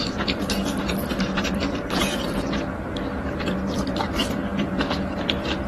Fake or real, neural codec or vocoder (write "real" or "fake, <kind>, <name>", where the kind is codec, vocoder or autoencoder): fake, vocoder, BigVGAN v2